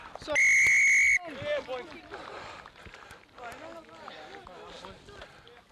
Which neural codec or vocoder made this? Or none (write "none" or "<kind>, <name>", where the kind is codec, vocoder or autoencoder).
none